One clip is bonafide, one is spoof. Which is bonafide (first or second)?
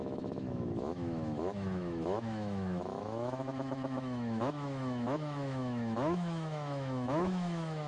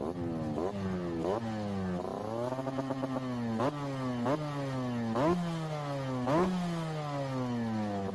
second